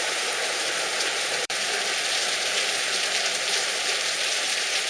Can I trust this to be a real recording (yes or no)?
no